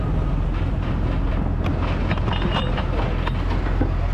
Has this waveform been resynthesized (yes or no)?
no